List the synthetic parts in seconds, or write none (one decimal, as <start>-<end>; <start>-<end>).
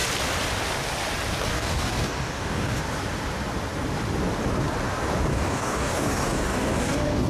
1.5-2.8; 5.3-7.3